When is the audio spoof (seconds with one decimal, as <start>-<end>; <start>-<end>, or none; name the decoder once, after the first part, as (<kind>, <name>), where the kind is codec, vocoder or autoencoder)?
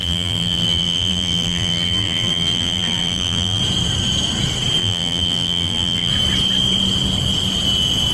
0.0-3.6 (vocoder, BigVGAN v2); 4.8-6.1